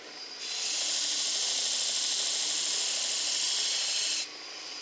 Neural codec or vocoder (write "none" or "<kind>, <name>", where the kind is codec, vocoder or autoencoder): none